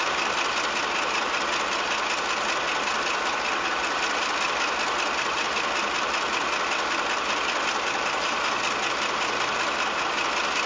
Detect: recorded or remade recorded